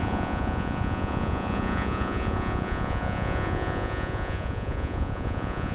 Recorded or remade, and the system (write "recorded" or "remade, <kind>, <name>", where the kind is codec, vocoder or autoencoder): remade, vocoder, Vocos